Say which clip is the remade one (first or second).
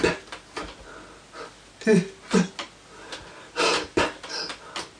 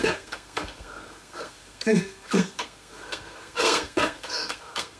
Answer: second